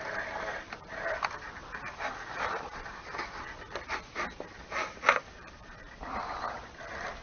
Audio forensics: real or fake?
fake